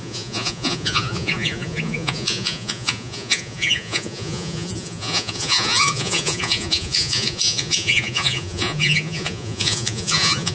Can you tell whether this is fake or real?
fake